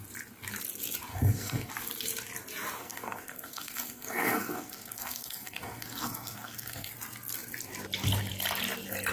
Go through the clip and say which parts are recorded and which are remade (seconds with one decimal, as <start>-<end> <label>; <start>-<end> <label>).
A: 0.0-1.1 recorded; 1.1-1.7 remade; 1.7-2.8 recorded; 2.8-6.9 remade; 6.9-9.1 recorded